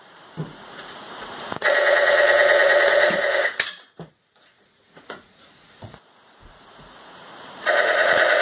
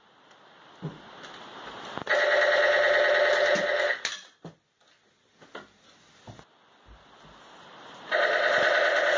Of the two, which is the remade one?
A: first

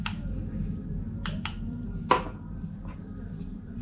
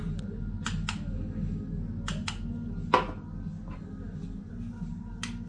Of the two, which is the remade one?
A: first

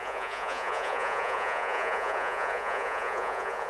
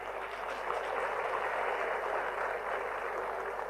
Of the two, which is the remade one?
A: first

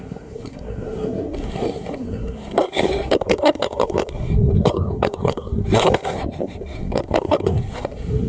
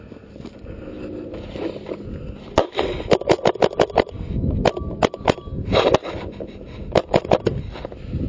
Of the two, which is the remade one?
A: first